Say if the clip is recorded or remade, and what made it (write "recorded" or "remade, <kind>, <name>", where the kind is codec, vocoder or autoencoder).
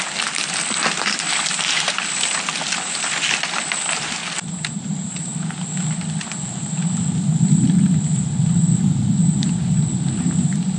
recorded